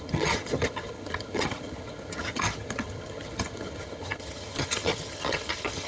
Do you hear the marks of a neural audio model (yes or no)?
yes